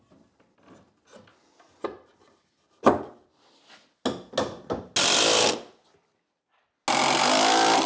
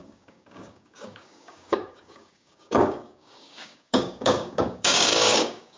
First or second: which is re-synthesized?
second